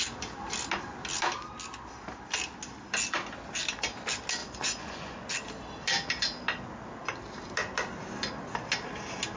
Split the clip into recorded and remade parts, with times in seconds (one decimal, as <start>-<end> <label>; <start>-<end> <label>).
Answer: 0.0-4.4 recorded; 4.4-5.3 remade; 5.3-9.4 recorded